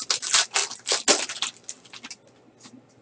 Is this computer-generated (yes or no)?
no